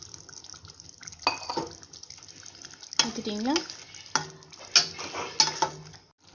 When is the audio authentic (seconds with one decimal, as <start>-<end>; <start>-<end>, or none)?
0.0-6.3